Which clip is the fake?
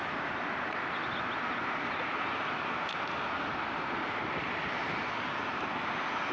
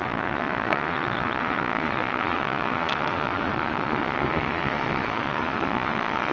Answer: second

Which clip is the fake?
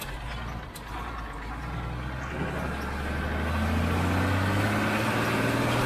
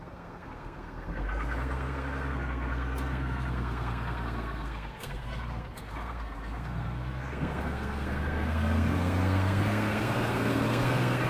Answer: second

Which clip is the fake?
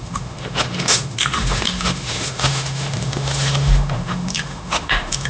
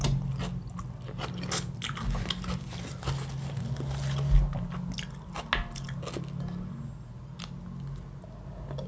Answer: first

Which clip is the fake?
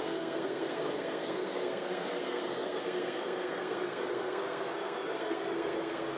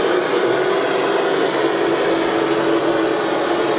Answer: first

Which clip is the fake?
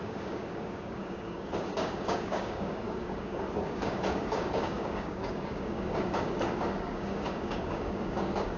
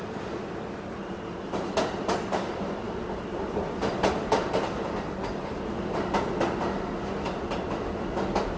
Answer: first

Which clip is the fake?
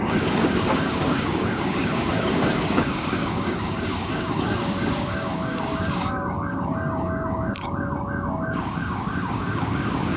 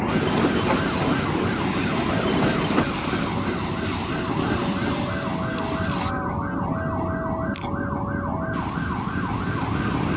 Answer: first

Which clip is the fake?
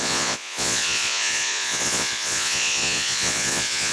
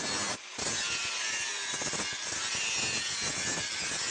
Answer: first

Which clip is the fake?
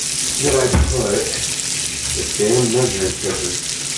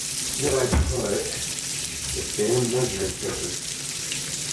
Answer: second